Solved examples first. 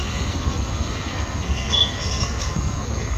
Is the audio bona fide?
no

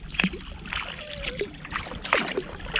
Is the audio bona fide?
yes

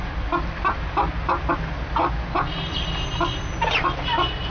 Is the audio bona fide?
yes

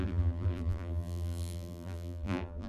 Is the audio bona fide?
no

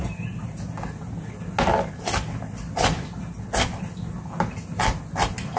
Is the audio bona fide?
yes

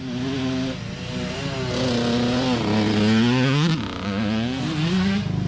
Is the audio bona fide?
yes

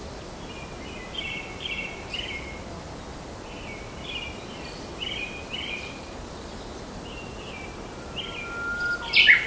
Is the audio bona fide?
yes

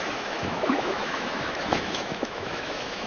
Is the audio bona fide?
no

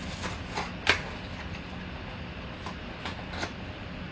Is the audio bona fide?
yes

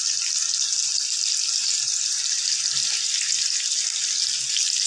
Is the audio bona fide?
yes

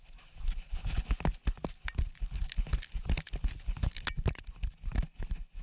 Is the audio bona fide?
yes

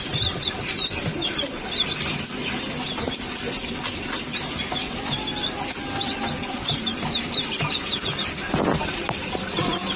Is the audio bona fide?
no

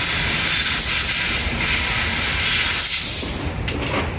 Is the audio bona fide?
yes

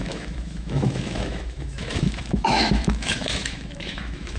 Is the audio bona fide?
no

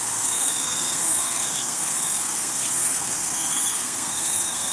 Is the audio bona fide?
no